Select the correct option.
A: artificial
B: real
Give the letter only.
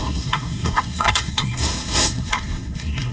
A